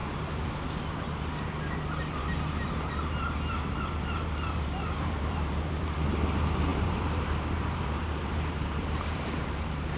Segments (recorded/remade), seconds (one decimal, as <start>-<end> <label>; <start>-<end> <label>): 0.0-2.0 recorded; 2.0-10.0 remade